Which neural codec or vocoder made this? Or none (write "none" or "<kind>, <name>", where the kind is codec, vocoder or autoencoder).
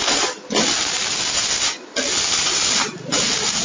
none